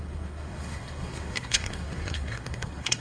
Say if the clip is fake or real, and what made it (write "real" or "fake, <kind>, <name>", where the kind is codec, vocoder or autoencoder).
fake, codec, SNAC